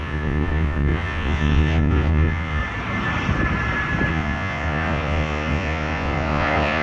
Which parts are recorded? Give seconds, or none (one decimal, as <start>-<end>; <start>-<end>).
2.6-4.1